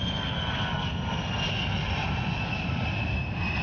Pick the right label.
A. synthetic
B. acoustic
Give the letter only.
A